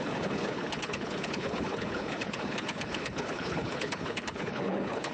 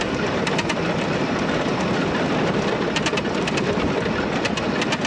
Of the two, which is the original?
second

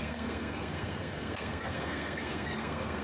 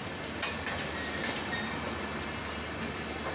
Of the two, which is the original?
second